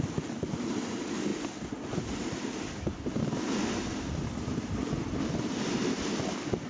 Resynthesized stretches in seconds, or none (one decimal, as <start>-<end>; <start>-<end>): 0.0-1.3; 5.2-6.7